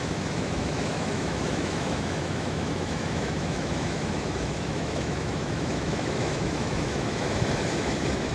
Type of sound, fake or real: fake